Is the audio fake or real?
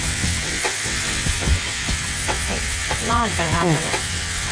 fake